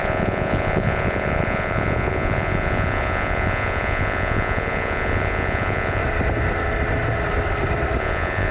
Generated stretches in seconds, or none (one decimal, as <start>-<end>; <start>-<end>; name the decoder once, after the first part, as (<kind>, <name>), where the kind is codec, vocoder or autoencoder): 0.0-6.0 (vocoder, Vocos); 8.0-8.5